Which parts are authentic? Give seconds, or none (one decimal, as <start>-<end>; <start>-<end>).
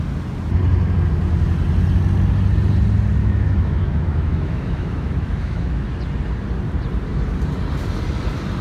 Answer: 0.0-3.2; 5.9-8.6